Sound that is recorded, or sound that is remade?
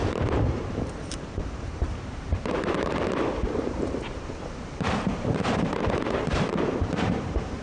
remade